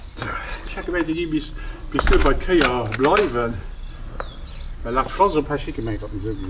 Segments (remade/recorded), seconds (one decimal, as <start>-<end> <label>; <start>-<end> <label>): 0.0-6.5 recorded